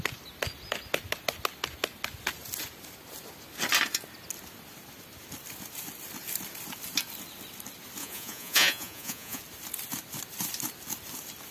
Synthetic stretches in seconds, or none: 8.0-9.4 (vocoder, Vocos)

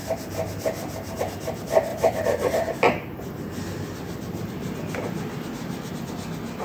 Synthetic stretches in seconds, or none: 0.0-1.2 (vocoder, BigVGAN v2); 1.9-5.9

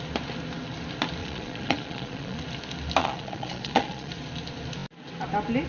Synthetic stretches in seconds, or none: 1.2-2.4 (vocoder, Vocos); 3.0-4.1

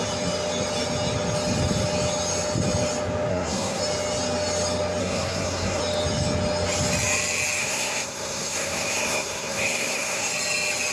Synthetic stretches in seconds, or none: 3.3-3.8 (codec, SNAC); 5.0-5.8; 7.6-10.3

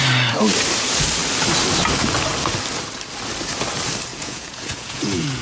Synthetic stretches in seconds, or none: 4.1-5.4 (vocoder, Vocos)

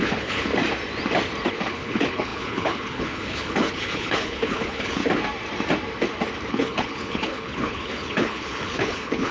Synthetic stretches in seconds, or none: 0.0-0.5 (codec, HILCodec); 1.5-5.0; 6.5-9.3

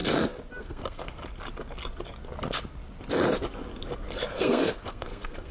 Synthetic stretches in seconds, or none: 0.6-1.2 (codec, SNAC); 4.4-5.5